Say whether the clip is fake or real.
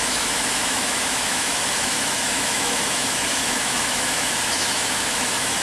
fake